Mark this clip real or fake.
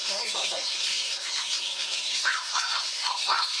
fake